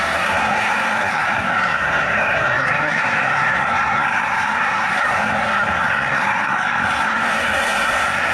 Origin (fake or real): fake